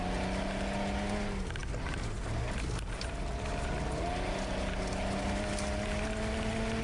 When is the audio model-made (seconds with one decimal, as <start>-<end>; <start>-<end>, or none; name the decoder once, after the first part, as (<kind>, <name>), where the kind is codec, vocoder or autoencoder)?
none